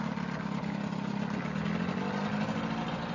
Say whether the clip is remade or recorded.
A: recorded